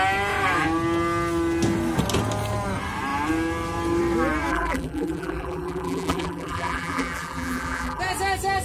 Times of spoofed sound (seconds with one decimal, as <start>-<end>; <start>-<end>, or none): 4.5-8.0